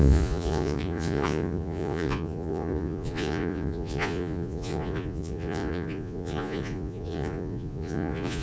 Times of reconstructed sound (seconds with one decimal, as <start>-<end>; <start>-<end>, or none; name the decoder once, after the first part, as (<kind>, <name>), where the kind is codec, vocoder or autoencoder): 0.0-8.4 (vocoder, Vocos)